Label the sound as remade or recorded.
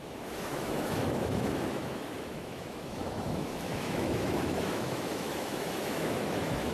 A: remade